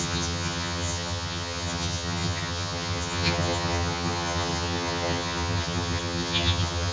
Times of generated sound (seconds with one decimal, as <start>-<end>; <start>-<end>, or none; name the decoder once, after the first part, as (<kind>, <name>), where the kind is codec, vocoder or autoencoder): 0.0-6.9 (vocoder, HiFi-GAN)